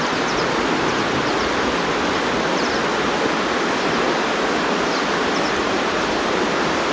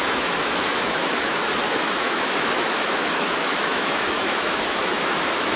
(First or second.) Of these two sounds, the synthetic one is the second